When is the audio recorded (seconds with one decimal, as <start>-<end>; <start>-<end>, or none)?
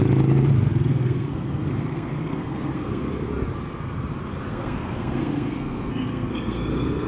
0.0-0.9; 3.3-4.5